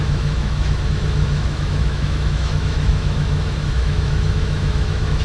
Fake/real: fake